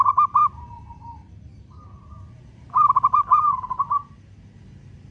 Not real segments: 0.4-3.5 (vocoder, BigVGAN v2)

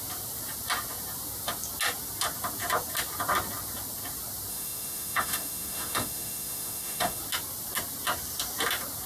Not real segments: 4.5-7.2 (autoencoder, DAC-VAE)

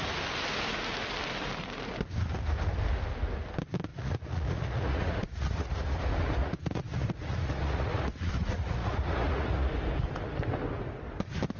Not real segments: 3.9-6.0 (vocoder, Vocos); 6.4-9.7

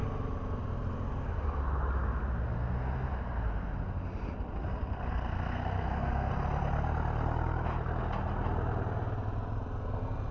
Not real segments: 5.1-6.3 (codec, SNAC)

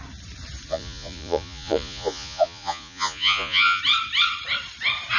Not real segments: 0.7-3.8 (vocoder, Vocos)

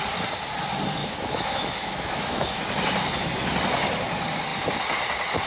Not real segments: 1.0-2.6 (autoencoder, DAC-VAE)